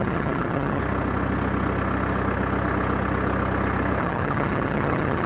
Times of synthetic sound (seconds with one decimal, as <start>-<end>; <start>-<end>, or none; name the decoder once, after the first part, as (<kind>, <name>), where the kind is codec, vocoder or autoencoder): 0.0-0.8 (vocoder, HiFi-GAN); 4.0-5.3